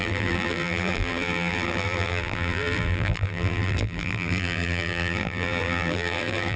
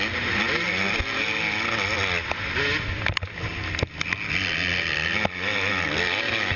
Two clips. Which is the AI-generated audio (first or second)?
first